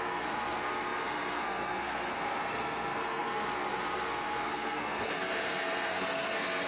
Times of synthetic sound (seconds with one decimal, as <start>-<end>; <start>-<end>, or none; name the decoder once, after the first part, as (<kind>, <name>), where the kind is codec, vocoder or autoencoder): 0.0-6.7 (codec, SNAC)